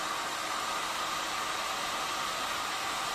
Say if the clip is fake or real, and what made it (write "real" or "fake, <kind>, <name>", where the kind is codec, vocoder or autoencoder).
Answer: real